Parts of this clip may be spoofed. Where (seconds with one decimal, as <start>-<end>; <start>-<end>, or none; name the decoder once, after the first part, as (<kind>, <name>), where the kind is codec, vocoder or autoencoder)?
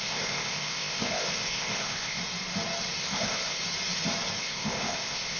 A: 0.0-2.2 (codec, ZipCodec); 3.0-3.6; 4.4-5.4